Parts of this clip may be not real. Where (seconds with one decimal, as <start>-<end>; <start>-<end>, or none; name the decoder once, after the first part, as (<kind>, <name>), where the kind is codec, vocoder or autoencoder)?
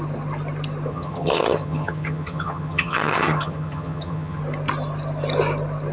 0.9-4.4 (vocoder, HiFi-GAN)